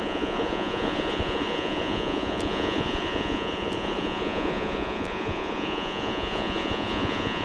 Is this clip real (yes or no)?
no